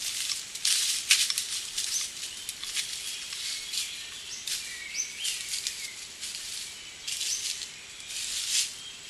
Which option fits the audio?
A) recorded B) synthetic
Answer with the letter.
A